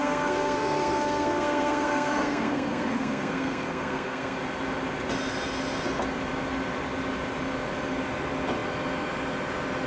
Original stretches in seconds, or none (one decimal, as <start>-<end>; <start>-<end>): 4.4-9.9